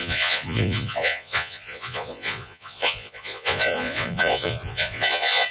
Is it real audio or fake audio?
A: fake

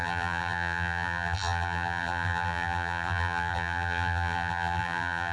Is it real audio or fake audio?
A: fake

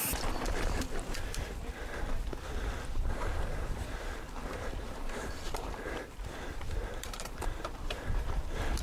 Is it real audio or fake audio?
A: fake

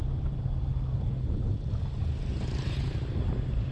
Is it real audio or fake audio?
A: real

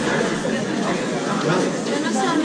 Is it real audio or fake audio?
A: fake